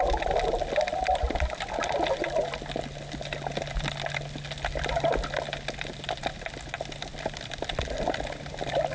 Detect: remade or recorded recorded